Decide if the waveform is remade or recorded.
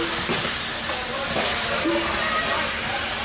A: recorded